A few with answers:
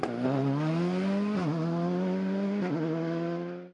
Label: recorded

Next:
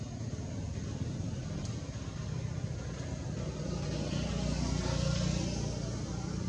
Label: recorded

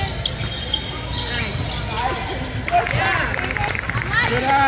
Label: recorded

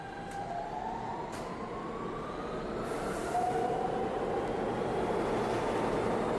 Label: recorded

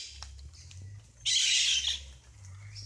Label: recorded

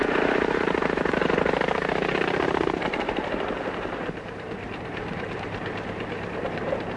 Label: remade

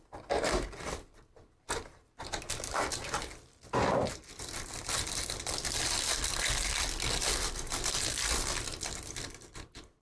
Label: remade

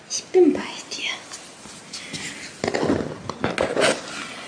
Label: recorded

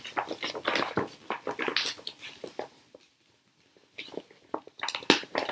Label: recorded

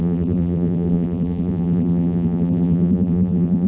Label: remade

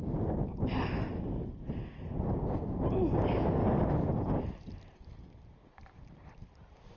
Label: recorded